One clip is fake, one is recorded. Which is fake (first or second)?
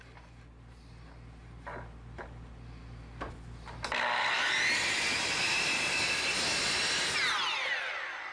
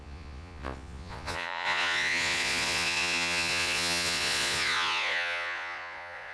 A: second